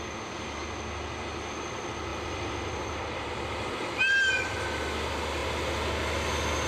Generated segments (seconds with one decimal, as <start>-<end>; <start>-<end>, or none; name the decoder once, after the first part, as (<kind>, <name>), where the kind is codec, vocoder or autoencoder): 2.1-4.5 (vocoder, BigVGAN v2)